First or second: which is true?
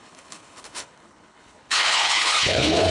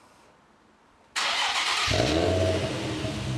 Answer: second